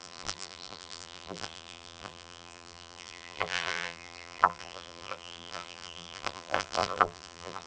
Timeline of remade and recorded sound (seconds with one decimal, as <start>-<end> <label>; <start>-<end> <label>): 0.0-7.7 remade